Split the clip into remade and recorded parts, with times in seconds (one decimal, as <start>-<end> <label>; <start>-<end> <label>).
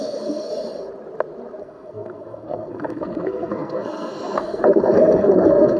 0.0-0.5 remade; 0.5-1.6 recorded; 1.6-5.8 remade